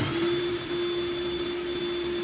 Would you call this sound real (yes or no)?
yes